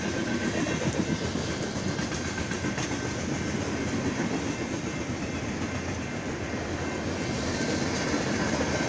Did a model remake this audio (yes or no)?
no